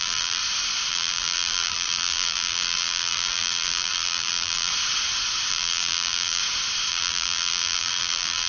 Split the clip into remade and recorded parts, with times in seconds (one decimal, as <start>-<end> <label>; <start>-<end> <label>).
0.0-0.4 remade; 0.4-0.9 recorded; 0.9-4.7 remade; 4.7-5.5 recorded; 5.5-6.4 remade; 6.4-6.9 recorded; 6.9-8.5 remade